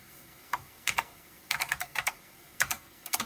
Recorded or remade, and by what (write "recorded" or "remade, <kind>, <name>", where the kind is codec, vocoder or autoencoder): remade, codec, SNAC